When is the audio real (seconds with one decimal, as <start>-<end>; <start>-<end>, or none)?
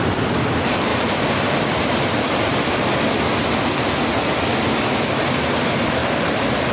0.0-0.9; 2.9-6.0